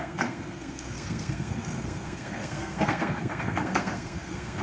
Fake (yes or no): yes